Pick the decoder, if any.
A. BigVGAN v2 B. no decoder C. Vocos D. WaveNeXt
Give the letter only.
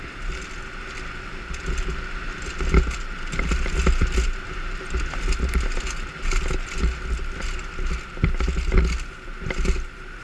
B